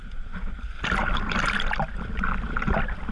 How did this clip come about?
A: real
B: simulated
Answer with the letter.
B